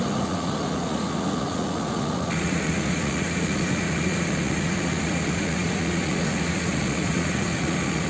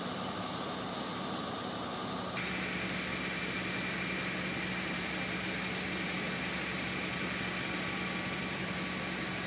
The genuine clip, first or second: second